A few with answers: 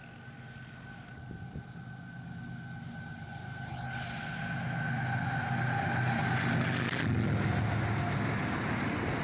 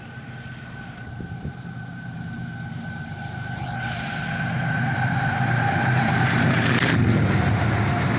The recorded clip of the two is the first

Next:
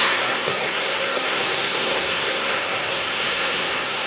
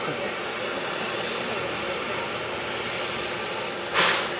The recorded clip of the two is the second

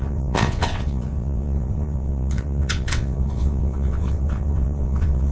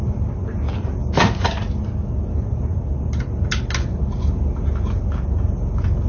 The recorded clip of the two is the second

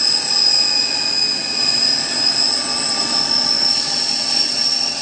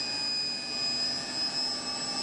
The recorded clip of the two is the second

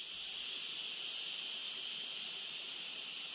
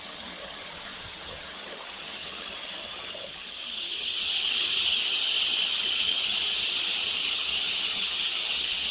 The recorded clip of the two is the first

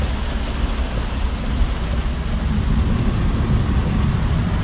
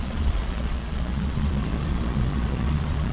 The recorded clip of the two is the first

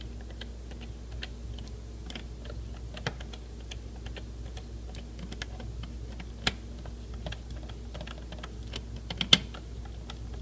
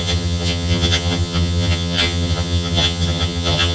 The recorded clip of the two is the first